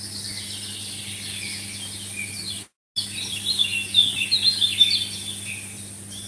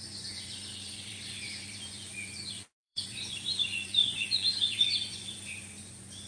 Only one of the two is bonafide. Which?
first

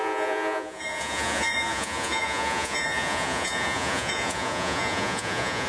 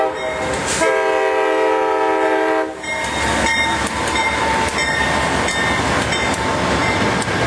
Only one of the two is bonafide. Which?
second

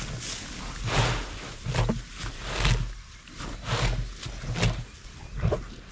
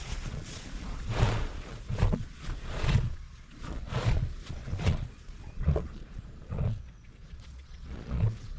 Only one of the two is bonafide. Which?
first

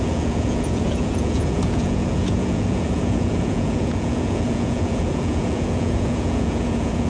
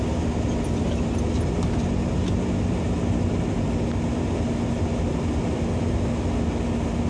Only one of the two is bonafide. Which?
second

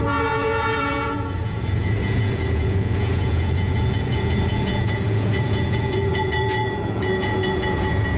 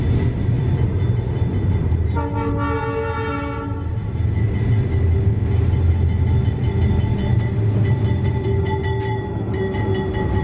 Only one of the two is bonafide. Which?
second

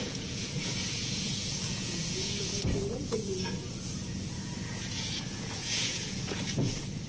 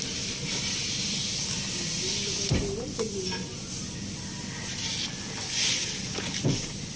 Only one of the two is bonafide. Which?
second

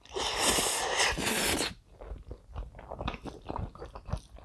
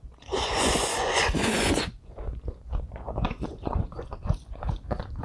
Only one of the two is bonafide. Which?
first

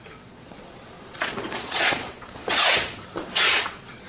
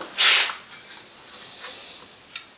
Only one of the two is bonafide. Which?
second